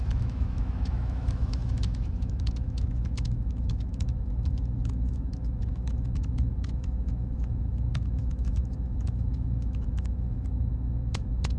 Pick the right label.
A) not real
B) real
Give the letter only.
A